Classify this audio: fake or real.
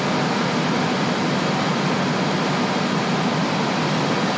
real